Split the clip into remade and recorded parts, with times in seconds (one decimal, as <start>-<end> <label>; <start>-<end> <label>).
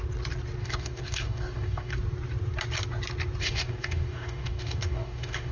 0.0-0.6 recorded; 0.6-1.9 remade; 1.9-3.4 recorded; 3.4-5.5 remade